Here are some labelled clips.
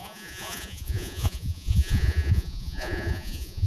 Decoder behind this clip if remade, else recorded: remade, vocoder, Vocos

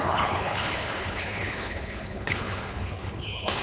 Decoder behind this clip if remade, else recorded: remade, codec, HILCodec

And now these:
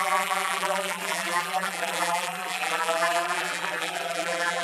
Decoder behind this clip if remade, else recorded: remade, vocoder, BigVGAN v2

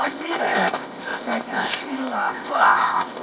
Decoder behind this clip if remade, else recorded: remade, codec, ZipCodec